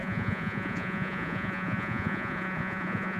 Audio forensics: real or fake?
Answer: fake